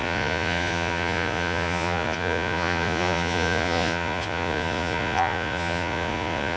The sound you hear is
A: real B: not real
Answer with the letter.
B